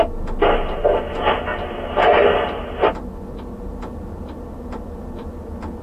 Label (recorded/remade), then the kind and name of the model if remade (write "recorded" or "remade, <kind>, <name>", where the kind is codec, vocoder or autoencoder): recorded